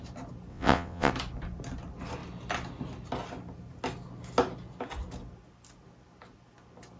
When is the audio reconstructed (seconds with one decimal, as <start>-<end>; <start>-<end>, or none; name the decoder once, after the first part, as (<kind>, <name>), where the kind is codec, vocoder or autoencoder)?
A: 0.5-1.1 (vocoder, WaveNeXt)